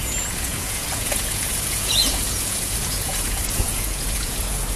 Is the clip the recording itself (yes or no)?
no